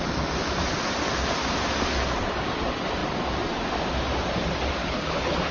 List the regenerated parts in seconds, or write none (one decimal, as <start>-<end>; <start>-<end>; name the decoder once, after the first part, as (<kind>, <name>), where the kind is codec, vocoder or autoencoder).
4.8-5.5 (codec, HILCodec)